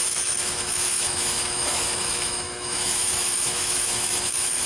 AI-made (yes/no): yes